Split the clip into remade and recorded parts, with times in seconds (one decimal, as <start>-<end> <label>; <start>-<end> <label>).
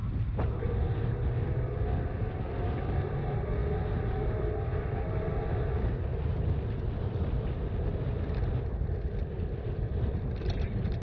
0.0-11.0 recorded